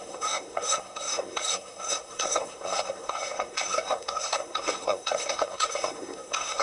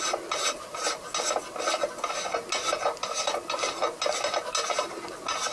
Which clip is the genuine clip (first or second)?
second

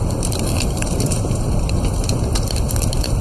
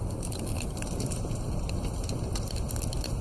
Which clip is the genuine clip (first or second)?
second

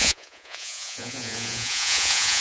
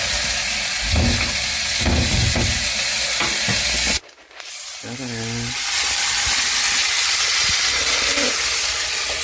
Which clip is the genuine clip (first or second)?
second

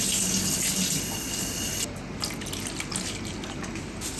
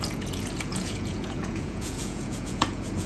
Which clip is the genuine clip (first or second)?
first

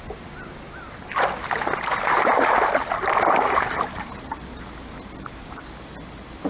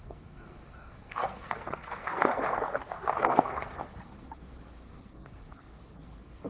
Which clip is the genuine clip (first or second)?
first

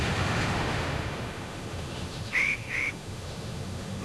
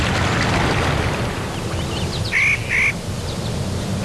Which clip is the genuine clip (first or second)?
second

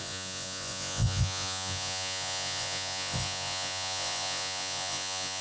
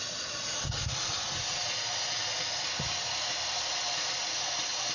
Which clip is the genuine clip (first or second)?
second